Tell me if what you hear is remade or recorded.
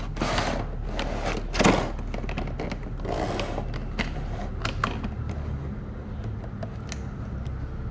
recorded